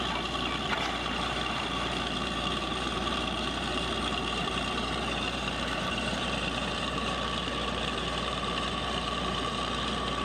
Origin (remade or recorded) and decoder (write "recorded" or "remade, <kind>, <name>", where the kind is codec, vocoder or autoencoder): remade, vocoder, BigVGAN v2